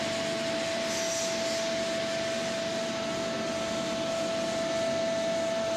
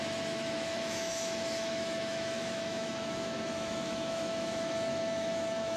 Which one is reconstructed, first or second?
second